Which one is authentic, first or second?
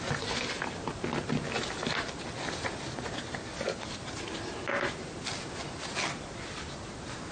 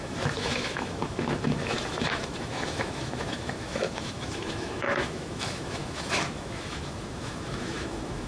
first